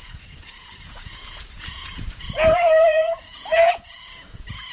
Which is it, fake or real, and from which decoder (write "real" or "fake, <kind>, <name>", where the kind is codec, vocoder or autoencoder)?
fake, vocoder, Vocos